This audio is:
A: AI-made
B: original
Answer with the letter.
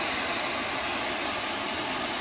B